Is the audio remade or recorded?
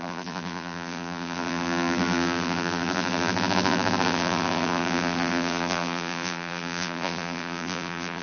remade